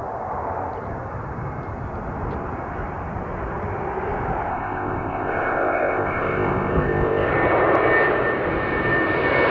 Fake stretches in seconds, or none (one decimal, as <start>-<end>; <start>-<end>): 4.5-7.3